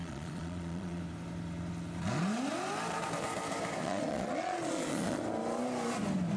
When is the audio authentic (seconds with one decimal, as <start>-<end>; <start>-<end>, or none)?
1.0-3.8; 5.2-6.4